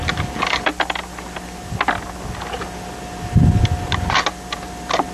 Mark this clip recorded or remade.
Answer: recorded